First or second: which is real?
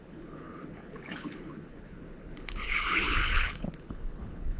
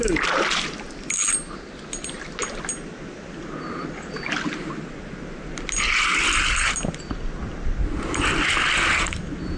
second